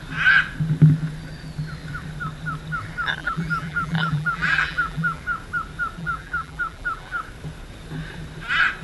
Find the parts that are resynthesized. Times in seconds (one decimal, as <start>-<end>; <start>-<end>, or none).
3.2-5.2; 6.0-7.2